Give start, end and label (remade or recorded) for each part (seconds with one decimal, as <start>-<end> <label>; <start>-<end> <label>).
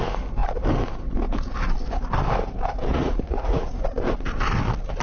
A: 0.0-2.9 recorded; 2.9-3.8 remade; 3.8-5.0 recorded